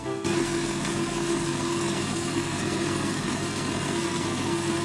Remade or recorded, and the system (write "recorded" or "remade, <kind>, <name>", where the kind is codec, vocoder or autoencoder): remade, codec, SNAC